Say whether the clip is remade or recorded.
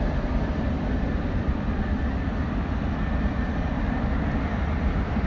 remade